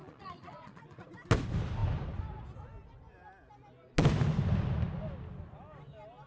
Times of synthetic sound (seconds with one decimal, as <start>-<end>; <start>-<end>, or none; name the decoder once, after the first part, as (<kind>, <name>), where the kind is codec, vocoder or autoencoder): 0.0-1.0 (vocoder, Vocos)